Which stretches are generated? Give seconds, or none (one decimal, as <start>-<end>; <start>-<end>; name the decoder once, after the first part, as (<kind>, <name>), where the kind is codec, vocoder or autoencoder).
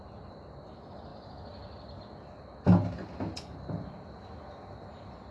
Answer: none